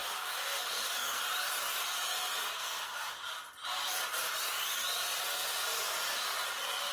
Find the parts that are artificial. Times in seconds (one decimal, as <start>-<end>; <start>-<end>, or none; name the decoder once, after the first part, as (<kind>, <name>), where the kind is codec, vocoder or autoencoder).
0.0-1.2 (codec, SNAC); 2.4-3.2